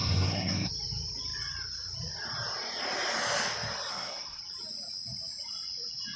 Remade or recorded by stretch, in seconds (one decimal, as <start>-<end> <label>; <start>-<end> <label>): 0.0-0.7 remade; 0.7-3.9 recorded; 3.9-4.4 remade; 4.4-6.2 recorded